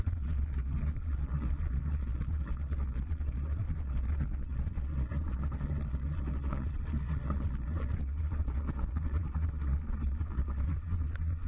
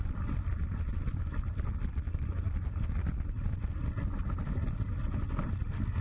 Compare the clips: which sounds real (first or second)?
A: second